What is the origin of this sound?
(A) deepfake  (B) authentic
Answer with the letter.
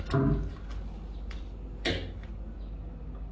B